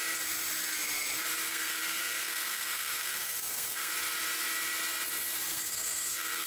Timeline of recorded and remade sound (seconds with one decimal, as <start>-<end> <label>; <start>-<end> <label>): 0.0-1.5 recorded; 1.5-3.9 remade; 3.9-5.5 recorded; 5.5-6.5 remade